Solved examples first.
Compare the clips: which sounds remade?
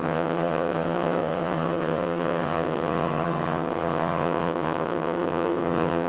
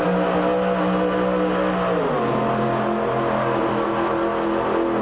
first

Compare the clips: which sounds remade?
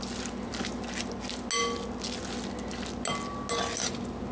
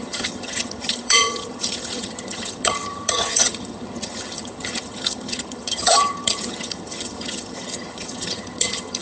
second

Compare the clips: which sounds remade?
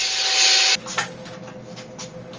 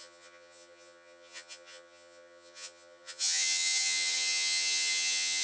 second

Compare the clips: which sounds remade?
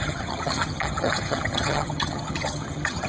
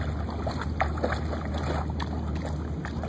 first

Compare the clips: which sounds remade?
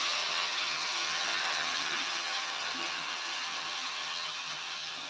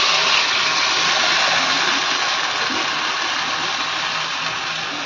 first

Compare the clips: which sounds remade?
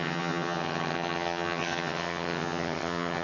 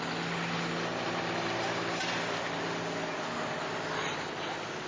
first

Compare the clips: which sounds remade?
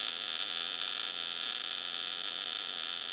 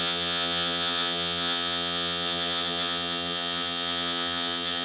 second